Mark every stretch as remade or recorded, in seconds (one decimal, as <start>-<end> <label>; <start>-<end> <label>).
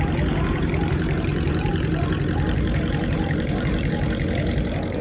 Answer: 0.0-5.0 remade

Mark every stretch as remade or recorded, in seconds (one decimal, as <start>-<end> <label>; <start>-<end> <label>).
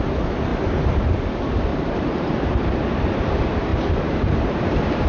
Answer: 0.0-1.7 recorded; 1.7-2.8 remade; 2.8-3.7 recorded; 3.7-4.6 remade; 4.6-5.1 recorded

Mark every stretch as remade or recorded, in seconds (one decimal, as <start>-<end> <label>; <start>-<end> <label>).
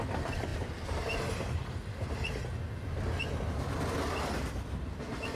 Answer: 0.0-5.4 recorded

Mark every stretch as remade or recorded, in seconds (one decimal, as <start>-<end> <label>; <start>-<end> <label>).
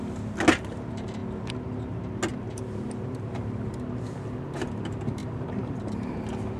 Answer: 0.0-2.3 recorded; 2.3-3.4 remade; 3.4-5.2 recorded; 5.2-5.8 remade; 5.8-6.6 recorded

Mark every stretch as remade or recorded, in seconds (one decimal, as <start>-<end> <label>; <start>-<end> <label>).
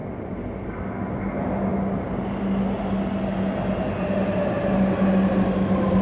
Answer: 0.0-6.0 recorded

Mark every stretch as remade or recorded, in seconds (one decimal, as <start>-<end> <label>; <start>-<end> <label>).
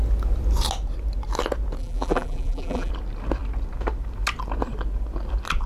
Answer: 0.0-1.8 recorded; 1.8-2.9 remade; 2.9-5.7 recorded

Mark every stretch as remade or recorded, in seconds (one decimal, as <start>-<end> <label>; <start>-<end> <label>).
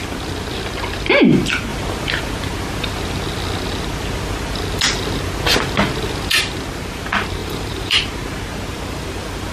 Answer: 0.0-7.4 recorded; 7.4-8.0 remade; 8.0-8.7 recorded; 8.7-9.5 remade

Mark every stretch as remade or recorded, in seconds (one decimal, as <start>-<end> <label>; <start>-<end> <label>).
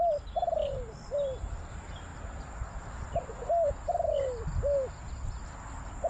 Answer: 0.0-0.9 recorded; 0.9-1.4 remade; 1.4-6.1 recorded